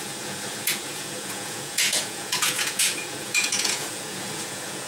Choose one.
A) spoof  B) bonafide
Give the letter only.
A